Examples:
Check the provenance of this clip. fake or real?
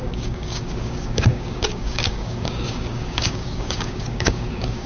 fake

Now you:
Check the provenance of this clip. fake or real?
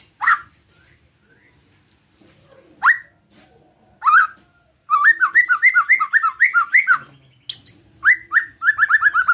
real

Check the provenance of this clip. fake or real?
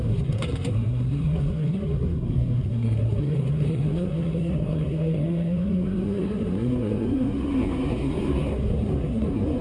fake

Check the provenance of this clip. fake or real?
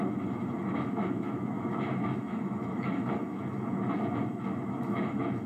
fake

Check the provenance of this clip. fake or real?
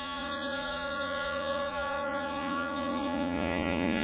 fake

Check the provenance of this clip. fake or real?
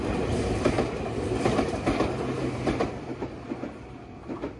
real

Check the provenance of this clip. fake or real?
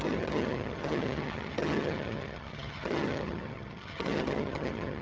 fake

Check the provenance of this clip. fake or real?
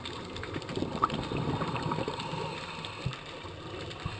real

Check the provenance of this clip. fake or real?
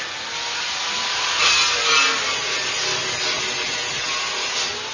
real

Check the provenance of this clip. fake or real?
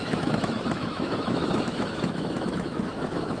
fake